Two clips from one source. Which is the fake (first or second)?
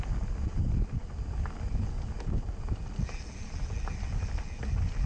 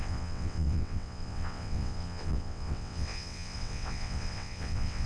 second